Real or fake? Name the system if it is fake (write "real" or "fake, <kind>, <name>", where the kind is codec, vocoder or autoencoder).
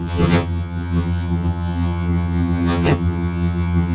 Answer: fake, vocoder, HiFi-GAN